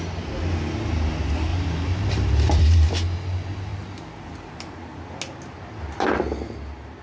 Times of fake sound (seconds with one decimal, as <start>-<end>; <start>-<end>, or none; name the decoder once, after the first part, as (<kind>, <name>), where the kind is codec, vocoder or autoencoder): 1.5-2.9 (vocoder, BigVGAN v2); 3.7-5.1